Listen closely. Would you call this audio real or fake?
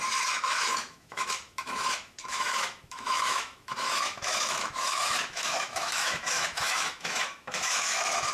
fake